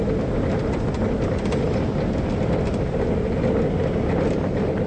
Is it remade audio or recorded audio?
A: recorded